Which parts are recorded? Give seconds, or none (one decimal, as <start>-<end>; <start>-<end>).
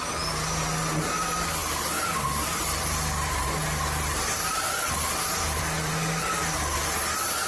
0.0-1.6; 5.6-7.5